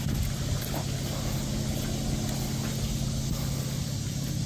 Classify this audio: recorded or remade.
recorded